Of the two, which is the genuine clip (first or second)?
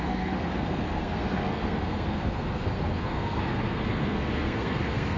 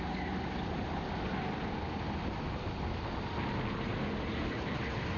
second